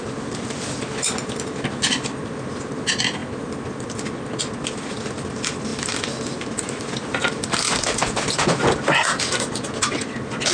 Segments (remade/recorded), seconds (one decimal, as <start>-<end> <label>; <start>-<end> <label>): 0.0-10.5 recorded